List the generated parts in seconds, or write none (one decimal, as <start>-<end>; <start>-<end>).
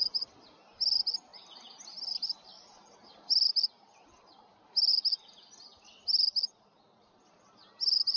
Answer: none